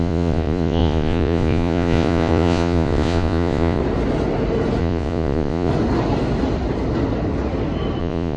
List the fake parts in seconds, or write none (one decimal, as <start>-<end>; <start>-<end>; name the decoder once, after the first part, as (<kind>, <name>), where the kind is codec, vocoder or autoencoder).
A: 0.0-3.8 (vocoder, Vocos); 4.8-5.7; 8.0-8.4

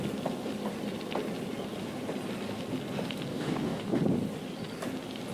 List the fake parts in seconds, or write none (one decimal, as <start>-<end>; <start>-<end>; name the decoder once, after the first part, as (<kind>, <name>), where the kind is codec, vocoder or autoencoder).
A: 3.3-4.0 (codec, DAC)

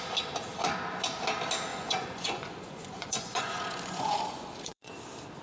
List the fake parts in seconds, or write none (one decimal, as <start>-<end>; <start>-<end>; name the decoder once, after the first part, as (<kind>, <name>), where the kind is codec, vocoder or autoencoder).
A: 1.7-4.9 (vocoder, Vocos)

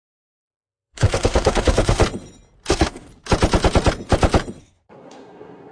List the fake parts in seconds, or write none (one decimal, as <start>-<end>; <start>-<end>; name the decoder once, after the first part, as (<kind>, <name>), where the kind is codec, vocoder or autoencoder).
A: 0.0-2.0 (codec, SNAC); 2.7-3.1; 4.6-5.7